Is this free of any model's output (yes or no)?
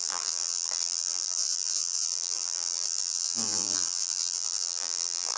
no